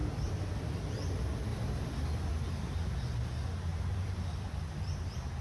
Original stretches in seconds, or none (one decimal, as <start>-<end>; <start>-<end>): 0.7-1.5; 2.3-3.7; 4.7-5.4